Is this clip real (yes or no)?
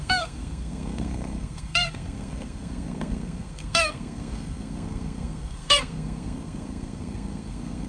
no